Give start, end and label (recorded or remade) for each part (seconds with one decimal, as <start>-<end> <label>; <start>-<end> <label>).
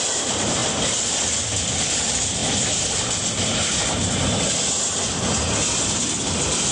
0.0-0.6 remade; 0.6-1.9 recorded; 1.9-2.4 remade; 2.4-6.7 recorded